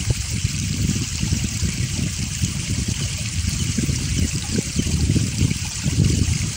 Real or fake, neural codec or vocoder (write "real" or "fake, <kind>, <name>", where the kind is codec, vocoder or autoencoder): fake, vocoder, BigVGAN v2